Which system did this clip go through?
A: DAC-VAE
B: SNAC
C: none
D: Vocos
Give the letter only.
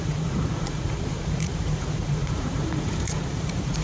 D